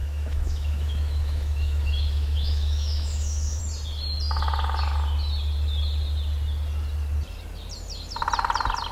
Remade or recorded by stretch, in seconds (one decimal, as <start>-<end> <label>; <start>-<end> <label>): 0.0-3.6 remade; 3.6-8.9 recorded